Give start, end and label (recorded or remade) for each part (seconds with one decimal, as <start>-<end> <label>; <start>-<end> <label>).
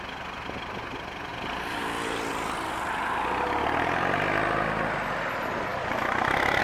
0.0-6.6 recorded